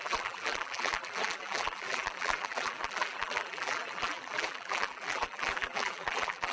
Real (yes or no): no